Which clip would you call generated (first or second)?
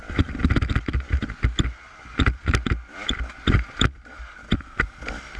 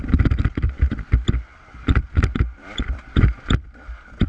second